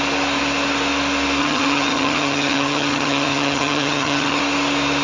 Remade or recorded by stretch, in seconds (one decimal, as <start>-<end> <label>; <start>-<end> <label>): 0.0-1.4 recorded; 1.4-4.4 remade; 4.4-5.0 recorded